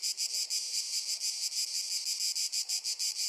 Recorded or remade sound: recorded